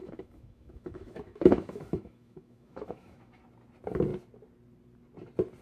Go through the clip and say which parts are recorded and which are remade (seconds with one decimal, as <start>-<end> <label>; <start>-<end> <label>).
0.0-3.4 remade; 3.4-5.6 recorded